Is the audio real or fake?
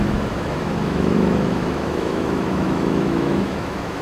fake